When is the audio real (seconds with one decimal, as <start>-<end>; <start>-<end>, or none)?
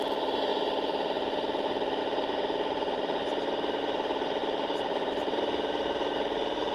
0.5-2.0; 3.2-3.8